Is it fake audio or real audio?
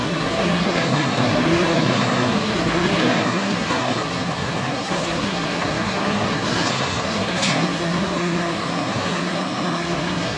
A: fake